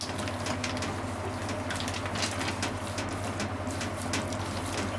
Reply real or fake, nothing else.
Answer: real